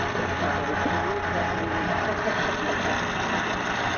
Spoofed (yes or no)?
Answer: no